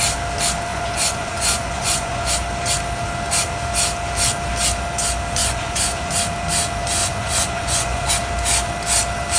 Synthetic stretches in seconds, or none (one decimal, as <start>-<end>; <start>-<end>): 0.7-2.3; 5.4-6.1; 7.0-8.1